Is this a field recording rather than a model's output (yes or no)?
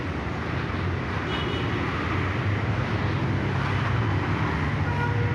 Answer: yes